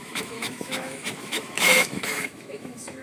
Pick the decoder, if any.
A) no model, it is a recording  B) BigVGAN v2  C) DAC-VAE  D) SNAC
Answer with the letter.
C